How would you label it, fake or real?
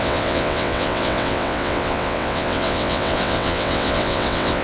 fake